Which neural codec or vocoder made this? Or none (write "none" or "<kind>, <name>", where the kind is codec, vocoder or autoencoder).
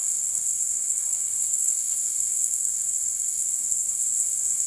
codec, SNAC